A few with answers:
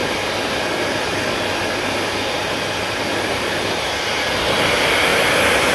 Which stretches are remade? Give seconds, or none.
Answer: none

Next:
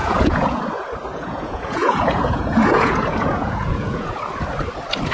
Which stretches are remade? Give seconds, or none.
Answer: 0.0-0.6 (vocoder, Vocos); 1.1-4.2